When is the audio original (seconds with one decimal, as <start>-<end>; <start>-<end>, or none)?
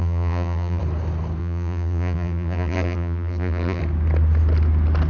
0.8-1.4; 3.8-5.1